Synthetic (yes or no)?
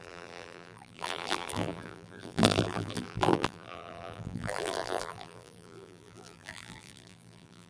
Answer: yes